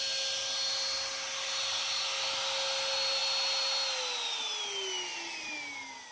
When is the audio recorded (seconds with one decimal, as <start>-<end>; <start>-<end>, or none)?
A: 0.0-6.1